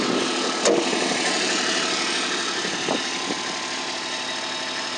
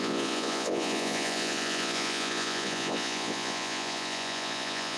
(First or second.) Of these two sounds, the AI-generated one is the second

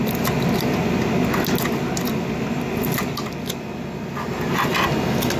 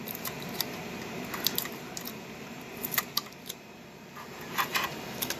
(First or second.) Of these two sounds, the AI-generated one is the second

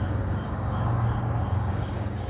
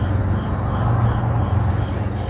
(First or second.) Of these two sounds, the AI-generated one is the first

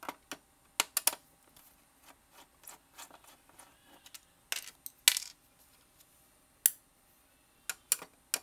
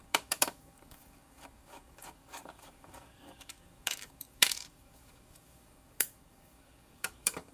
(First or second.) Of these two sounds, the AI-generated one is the second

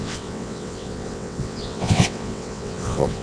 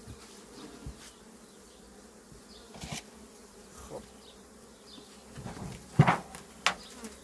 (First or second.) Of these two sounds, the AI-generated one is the first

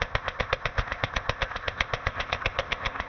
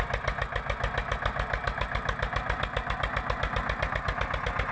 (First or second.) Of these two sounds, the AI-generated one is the first